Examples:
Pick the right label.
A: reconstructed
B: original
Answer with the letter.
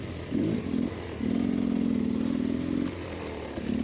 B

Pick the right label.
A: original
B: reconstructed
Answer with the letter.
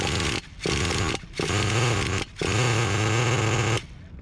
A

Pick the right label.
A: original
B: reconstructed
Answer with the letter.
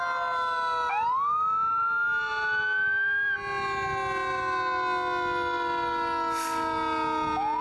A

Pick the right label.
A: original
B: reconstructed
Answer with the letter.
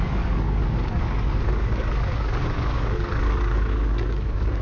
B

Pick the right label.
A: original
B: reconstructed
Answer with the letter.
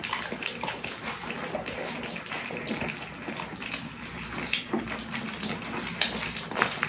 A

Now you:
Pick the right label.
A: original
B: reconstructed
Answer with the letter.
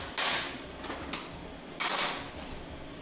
A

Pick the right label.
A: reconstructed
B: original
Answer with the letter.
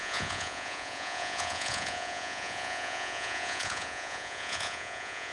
A